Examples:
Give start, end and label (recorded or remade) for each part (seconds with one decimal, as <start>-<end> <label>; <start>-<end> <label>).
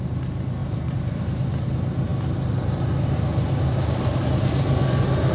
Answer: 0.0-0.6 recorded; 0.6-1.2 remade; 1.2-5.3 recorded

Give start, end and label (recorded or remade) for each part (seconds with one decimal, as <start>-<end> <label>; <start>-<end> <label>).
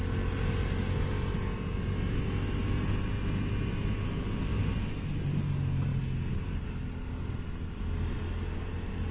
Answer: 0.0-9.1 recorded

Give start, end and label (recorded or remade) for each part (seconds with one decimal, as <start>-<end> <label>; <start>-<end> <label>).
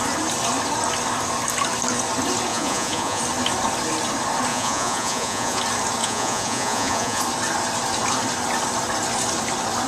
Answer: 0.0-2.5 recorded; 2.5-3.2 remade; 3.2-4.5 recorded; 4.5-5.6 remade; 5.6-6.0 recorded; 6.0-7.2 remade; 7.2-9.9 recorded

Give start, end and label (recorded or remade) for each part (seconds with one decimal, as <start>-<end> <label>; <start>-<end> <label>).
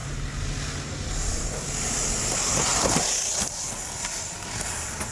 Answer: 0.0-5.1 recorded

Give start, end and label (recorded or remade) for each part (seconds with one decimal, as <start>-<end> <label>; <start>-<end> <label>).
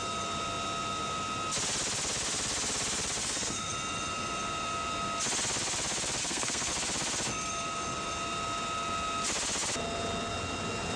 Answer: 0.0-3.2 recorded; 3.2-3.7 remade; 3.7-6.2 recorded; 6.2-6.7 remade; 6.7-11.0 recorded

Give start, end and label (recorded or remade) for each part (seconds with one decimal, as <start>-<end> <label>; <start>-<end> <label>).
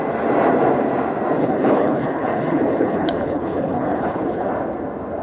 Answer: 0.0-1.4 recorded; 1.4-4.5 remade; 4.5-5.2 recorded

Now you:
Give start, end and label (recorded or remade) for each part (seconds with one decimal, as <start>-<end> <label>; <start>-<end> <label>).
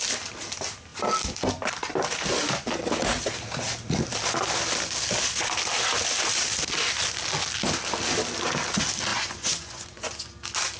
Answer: 0.0-9.1 recorded; 9.1-10.3 remade; 10.3-10.8 recorded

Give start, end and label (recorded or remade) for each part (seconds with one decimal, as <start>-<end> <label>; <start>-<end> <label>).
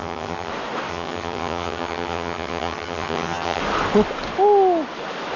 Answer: 0.0-0.5 remade; 0.5-0.9 recorded; 0.9-3.6 remade; 3.6-5.4 recorded